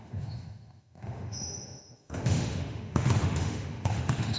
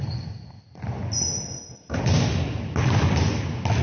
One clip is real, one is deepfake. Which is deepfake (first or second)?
first